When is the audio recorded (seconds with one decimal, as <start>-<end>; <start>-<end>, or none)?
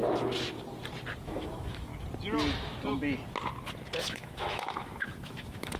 0.0-1.2; 1.9-4.0